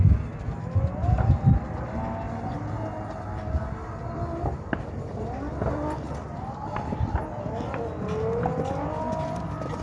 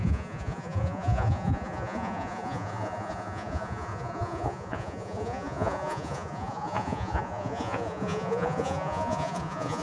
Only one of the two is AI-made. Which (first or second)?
second